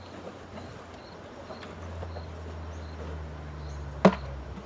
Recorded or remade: recorded